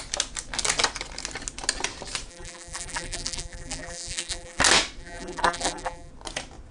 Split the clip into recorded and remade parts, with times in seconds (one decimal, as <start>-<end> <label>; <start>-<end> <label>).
0.0-2.3 recorded; 2.3-4.6 remade; 4.6-5.0 recorded; 5.0-6.1 remade; 6.1-6.7 recorded